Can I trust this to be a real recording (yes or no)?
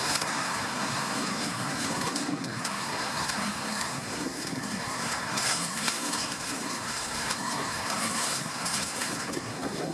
no